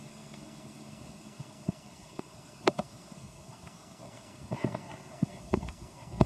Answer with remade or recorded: remade